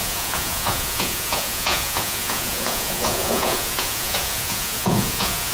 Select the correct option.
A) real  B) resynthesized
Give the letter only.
B